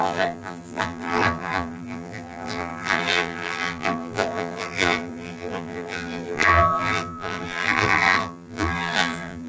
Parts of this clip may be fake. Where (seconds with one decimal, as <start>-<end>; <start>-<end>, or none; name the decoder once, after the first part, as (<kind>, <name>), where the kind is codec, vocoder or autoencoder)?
0.0-9.5 (vocoder, BigVGAN v2)